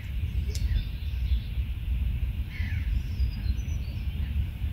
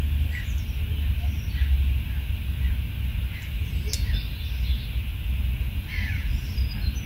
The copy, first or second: first